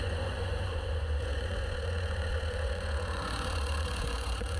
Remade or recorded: remade